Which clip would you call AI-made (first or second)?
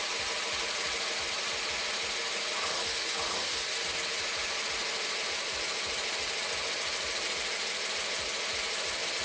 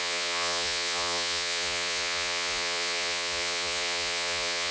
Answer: second